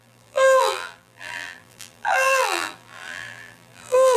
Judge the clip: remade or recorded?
remade